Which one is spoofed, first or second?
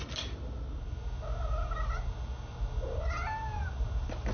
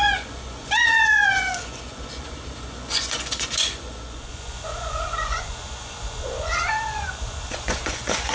second